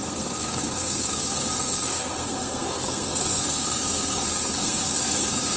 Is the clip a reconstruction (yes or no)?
yes